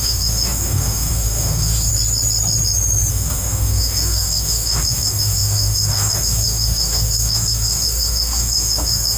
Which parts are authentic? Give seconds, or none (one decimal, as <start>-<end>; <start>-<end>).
1.9-3.1